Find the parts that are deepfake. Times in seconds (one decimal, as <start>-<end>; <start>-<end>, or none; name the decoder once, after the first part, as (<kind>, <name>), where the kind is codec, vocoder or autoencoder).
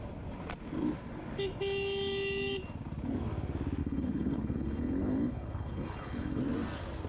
3.8-6.4 (codec, HILCodec)